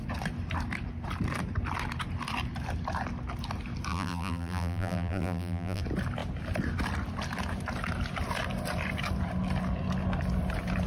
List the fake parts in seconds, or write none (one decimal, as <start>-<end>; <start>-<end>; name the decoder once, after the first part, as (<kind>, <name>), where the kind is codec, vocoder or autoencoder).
3.9-5.8 (vocoder, BigVGAN v2)